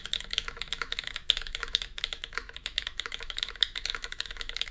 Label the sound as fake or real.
fake